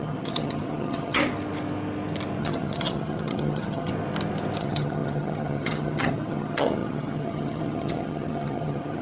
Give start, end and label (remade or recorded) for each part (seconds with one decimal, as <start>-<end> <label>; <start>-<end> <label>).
0.0-1.2 remade; 1.2-2.4 recorded; 2.4-3.9 remade; 3.9-4.6 recorded; 4.6-9.0 remade